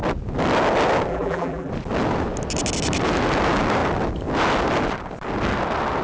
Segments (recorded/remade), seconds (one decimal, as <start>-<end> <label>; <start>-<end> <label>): 0.0-1.1 recorded; 1.1-1.7 remade; 1.7-6.0 recorded

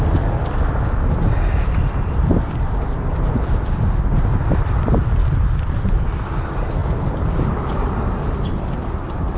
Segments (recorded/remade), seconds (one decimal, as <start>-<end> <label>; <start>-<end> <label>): 0.0-6.8 remade; 6.8-8.4 recorded; 8.4-9.4 remade